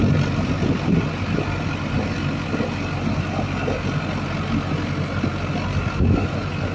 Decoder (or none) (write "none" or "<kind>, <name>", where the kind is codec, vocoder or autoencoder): none